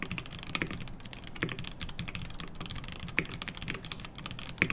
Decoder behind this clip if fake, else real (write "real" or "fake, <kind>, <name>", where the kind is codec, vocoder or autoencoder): real